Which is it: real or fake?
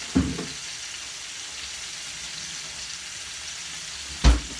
real